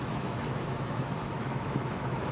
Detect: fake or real fake